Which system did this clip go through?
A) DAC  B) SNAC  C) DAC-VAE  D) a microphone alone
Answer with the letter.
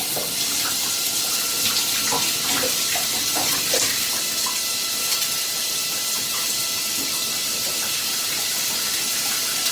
D